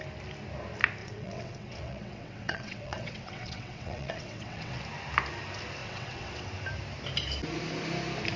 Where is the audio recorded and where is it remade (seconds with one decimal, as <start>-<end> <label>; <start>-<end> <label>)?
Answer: 0.0-1.0 recorded; 1.0-4.8 remade; 4.8-5.8 recorded; 5.8-6.5 remade; 6.5-8.4 recorded